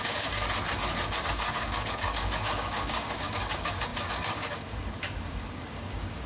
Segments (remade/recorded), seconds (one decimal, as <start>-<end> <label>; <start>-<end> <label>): 0.0-0.4 remade; 0.4-1.3 recorded; 1.3-6.3 remade

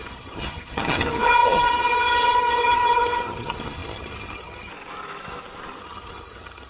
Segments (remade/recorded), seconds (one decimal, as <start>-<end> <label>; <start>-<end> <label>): 0.0-4.7 remade; 4.7-5.8 recorded; 5.8-6.7 remade

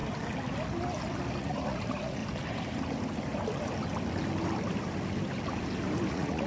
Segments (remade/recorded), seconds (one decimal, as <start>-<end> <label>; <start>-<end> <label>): 0.0-1.4 recorded; 1.4-2.2 remade; 2.2-6.1 recorded; 6.1-6.5 remade

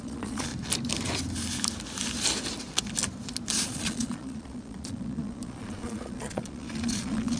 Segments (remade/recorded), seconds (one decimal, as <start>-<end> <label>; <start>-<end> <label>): 0.0-0.5 remade; 0.5-3.6 recorded; 3.6-7.4 remade

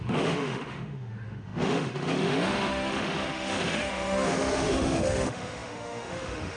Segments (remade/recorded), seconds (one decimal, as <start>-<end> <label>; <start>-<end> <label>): 0.0-6.6 remade